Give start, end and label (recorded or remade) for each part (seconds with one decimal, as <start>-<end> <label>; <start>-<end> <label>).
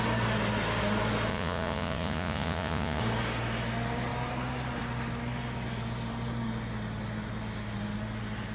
0.0-1.3 recorded; 1.3-3.0 remade; 3.0-8.5 recorded